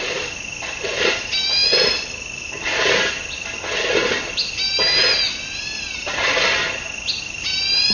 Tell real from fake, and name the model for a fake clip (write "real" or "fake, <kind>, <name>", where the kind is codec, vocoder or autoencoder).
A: real